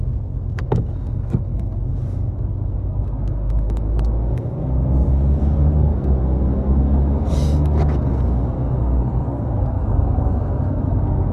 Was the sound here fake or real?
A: fake